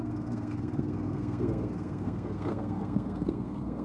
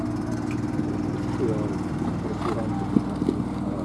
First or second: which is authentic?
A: second